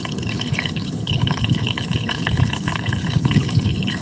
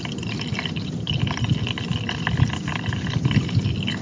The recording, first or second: second